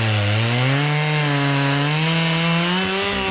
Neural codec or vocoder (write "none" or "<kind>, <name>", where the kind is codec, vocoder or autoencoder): none